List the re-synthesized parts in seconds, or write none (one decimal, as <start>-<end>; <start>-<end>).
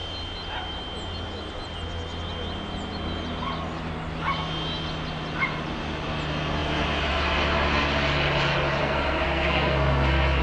8.8-10.4